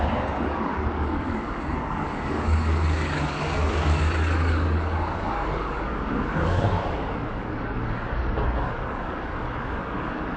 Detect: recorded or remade remade